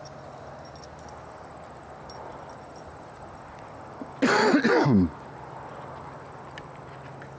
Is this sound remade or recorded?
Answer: recorded